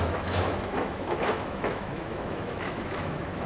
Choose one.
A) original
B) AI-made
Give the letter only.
B